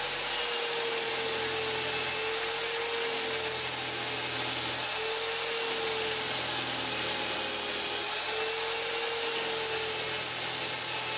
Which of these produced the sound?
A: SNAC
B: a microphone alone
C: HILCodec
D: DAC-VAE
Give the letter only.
B